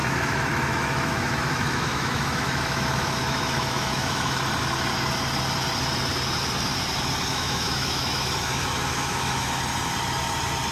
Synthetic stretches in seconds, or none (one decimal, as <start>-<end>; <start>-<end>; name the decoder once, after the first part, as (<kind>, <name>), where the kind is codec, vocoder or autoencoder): 0.0-4.4 (autoencoder, DAC-VAE); 7.3-9.6

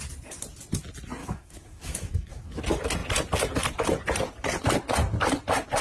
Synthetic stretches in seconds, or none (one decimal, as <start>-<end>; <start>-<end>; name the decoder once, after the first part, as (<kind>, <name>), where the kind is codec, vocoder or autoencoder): 1.2-2.6 (autoencoder, DAC-VAE)

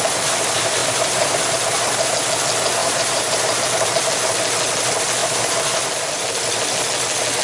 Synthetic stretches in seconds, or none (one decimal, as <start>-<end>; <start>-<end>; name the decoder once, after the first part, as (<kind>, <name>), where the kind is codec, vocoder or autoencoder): 0.8-2.0 (vocoder, BigVGAN v2); 2.8-3.6; 5.2-5.8

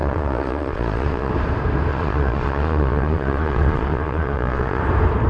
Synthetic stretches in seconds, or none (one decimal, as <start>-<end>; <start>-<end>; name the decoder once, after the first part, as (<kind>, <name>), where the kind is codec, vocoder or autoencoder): 0.0-1.3 (vocoder, Vocos); 1.9-4.8

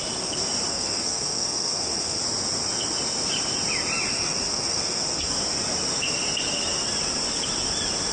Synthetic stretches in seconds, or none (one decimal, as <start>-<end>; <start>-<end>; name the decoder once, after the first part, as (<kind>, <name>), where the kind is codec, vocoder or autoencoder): 0.7-2.2 (codec, SNAC); 4.1-5.3

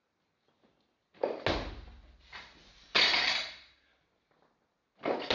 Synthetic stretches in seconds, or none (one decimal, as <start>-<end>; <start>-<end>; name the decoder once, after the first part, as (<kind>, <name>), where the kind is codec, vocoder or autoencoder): none

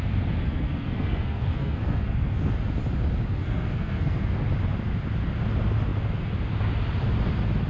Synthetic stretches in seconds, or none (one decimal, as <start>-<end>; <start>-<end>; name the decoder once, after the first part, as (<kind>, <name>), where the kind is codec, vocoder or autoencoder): 0.4-2.5 (codec, SNAC); 3.3-4.3

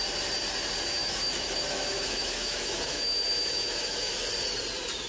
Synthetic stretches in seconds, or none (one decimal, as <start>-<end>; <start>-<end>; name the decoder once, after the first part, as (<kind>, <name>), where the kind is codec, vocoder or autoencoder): 1.0-4.1 (autoencoder, DAC-VAE)